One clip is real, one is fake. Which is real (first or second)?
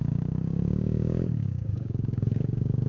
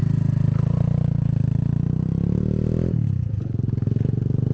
second